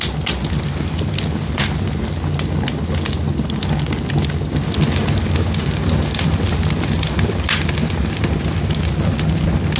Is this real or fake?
real